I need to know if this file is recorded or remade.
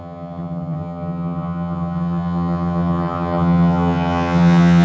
remade